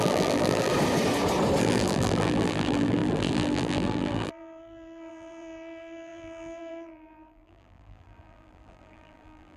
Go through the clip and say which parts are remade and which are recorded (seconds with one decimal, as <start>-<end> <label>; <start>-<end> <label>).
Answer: 0.0-0.7 remade; 0.7-1.6 recorded; 1.6-9.6 remade